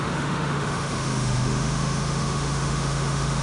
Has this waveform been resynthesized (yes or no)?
yes